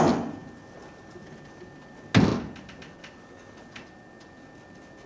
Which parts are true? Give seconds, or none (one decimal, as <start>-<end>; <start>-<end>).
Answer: 0.0-5.1